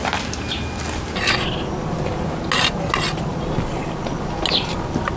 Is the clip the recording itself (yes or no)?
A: yes